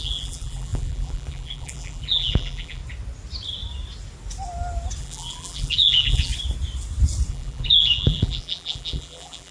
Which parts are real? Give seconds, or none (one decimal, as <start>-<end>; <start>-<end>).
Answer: 2.8-5.0; 6.3-7.3